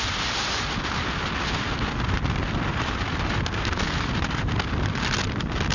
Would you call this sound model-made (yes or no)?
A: no